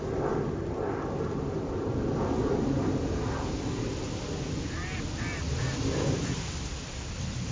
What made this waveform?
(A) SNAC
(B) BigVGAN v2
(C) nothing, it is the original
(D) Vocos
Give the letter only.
C